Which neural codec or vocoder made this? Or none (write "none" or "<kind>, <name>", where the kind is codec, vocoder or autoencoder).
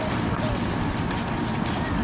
none